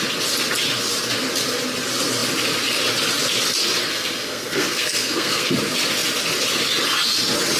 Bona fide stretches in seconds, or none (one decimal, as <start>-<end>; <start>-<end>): 0.0-3.9; 5.5-7.6